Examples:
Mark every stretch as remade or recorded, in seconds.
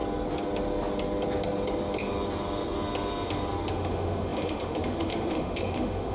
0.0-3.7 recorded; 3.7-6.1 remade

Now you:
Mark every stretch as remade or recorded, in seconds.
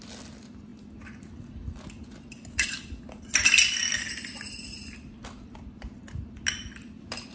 0.0-7.3 recorded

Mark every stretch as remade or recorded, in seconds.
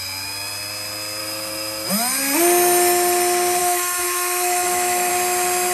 0.0-1.2 recorded; 1.2-1.9 remade; 1.9-3.6 recorded; 3.6-5.1 remade; 5.1-5.7 recorded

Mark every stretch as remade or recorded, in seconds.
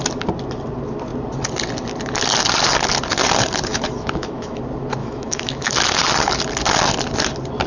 0.0-3.7 recorded; 3.7-4.6 remade; 4.6-5.0 recorded; 5.0-5.7 remade; 5.7-7.7 recorded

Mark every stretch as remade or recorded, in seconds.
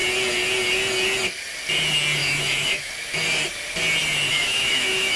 0.0-2.2 recorded; 2.2-2.9 remade; 2.9-4.3 recorded; 4.3-5.2 remade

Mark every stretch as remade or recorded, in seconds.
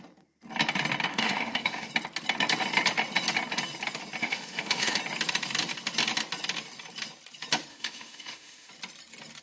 0.0-1.1 recorded; 1.1-1.9 remade; 1.9-4.2 recorded; 4.2-5.0 remade; 5.0-7.7 recorded; 7.7-8.7 remade; 8.7-9.4 recorded